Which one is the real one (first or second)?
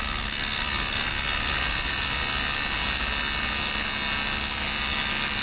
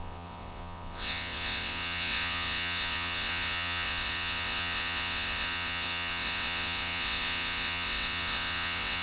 first